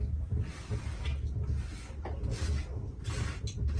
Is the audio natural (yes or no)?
yes